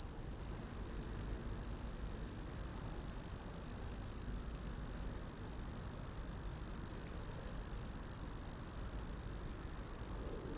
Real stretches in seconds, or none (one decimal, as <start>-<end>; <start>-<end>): 0.0-6.5; 7.2-10.6